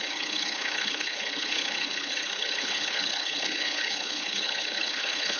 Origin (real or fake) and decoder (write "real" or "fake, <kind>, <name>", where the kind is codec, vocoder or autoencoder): fake, codec, HILCodec